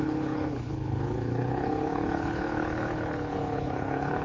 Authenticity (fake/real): fake